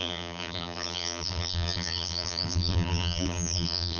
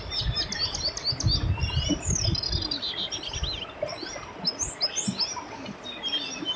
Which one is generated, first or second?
first